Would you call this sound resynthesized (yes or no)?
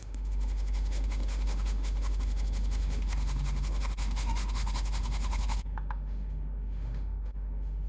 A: yes